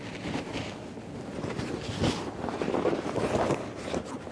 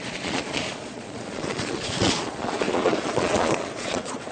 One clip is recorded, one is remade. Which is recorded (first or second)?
first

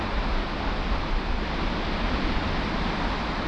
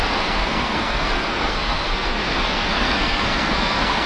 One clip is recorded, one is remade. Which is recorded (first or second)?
first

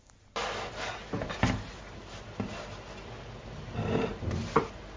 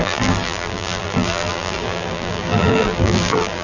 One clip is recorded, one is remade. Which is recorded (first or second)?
first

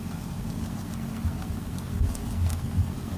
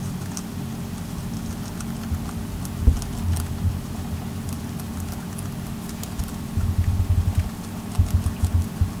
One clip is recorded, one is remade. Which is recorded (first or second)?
second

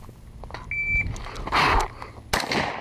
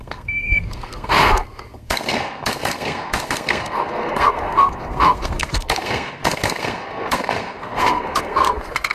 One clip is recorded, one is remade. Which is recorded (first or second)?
first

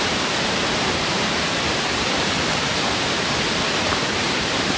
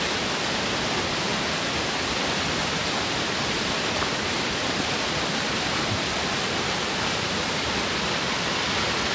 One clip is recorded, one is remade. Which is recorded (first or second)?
second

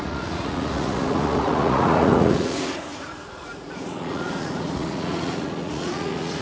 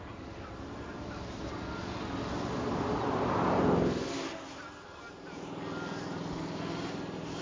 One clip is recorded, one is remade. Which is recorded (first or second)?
second